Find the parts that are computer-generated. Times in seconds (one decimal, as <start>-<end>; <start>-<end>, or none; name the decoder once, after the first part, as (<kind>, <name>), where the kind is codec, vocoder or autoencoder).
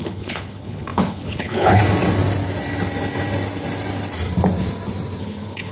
0.0-1.8 (codec, HILCodec); 5.2-5.7